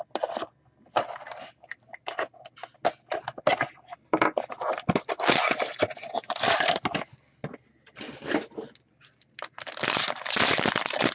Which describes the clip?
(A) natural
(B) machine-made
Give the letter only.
A